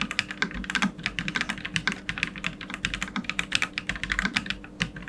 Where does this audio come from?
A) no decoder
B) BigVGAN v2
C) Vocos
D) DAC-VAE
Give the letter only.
A